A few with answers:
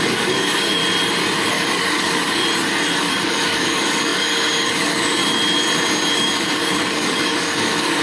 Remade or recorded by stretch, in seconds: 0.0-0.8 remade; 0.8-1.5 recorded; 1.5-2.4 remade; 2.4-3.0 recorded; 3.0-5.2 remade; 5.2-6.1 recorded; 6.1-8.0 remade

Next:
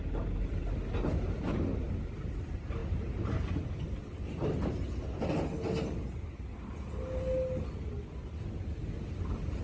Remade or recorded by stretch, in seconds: 0.0-2.8 recorded; 2.8-4.0 remade; 4.0-9.6 recorded

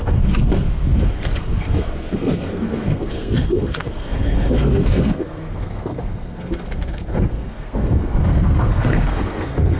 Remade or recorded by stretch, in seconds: 0.0-9.8 remade

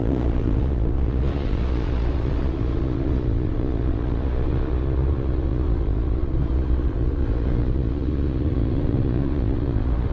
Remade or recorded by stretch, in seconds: 0.0-10.1 remade

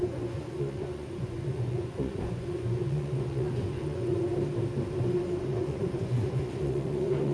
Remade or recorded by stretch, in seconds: 0.0-4.3 remade; 4.3-5.4 recorded; 5.4-7.3 remade